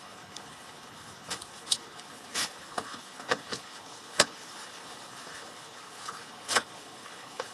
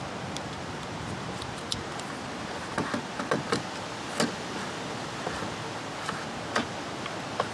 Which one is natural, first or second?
second